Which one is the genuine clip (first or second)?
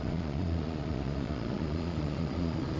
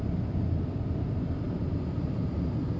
second